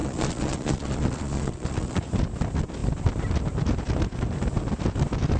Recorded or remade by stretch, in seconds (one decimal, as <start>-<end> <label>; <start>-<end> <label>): 0.0-2.0 remade; 2.0-5.4 recorded